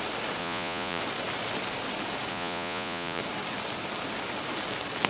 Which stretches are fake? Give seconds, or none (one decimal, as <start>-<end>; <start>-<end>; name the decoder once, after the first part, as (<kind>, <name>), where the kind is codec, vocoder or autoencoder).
0.4-1.0 (vocoder, Vocos); 2.3-3.2